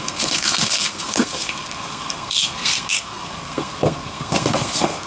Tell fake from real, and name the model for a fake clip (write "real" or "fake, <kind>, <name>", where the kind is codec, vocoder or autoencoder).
fake, codec, SNAC